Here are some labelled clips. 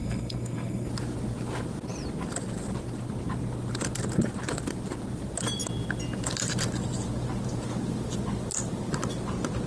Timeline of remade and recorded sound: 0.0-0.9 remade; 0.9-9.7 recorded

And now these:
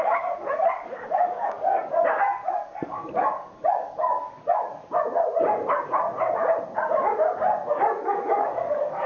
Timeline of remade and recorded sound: 0.0-4.7 remade; 4.7-7.7 recorded; 7.7-9.1 remade

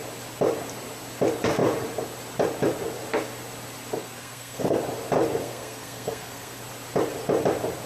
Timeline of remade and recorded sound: 0.0-4.0 recorded; 4.0-4.8 remade; 4.8-5.4 recorded; 5.4-6.6 remade; 6.6-7.9 recorded

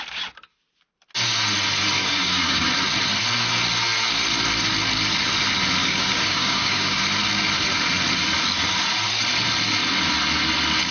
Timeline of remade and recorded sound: 0.0-2.0 recorded; 2.0-2.7 remade; 2.7-5.8 recorded; 5.8-7.0 remade; 7.0-10.9 recorded